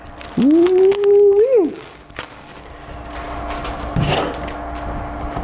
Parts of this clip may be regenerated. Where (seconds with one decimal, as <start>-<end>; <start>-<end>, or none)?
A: 0.6-2.7